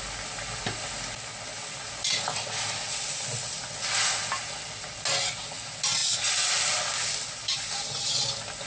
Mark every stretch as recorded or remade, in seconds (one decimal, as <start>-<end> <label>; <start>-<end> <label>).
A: 0.0-8.7 recorded